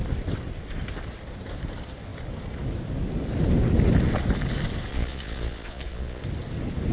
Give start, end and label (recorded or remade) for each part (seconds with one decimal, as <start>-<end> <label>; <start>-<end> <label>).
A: 0.0-4.9 recorded; 4.9-6.2 remade; 6.2-6.9 recorded

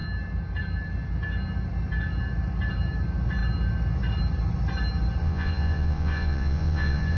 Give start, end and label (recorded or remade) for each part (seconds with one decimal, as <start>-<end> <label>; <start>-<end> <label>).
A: 0.0-5.2 recorded; 5.2-7.2 remade

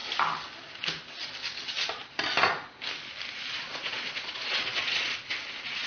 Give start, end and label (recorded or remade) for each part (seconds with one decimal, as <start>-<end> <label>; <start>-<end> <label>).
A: 0.0-3.5 recorded; 3.5-5.9 remade

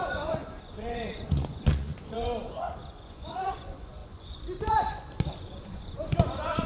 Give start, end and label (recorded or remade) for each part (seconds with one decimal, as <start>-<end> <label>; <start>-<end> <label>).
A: 0.0-6.7 remade

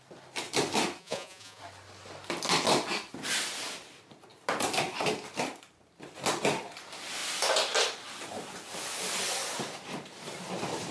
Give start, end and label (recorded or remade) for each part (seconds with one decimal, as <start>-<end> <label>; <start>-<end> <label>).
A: 0.0-1.0 recorded; 1.0-1.6 remade; 1.6-10.9 recorded

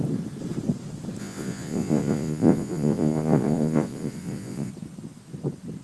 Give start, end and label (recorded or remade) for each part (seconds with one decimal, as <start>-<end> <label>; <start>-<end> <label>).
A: 0.0-1.2 recorded; 1.2-4.7 remade; 4.7-5.8 recorded